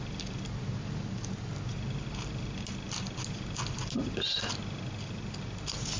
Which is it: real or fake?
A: real